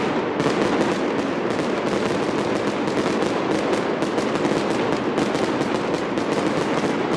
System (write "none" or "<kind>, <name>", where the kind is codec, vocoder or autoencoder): none